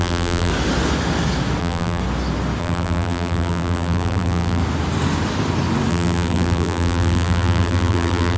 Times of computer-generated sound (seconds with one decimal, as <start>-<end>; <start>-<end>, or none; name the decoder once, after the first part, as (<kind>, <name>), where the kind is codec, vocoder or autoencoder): 0.0-0.5 (vocoder, BigVGAN v2); 1.6-2.0; 2.6-4.6; 5.9-8.4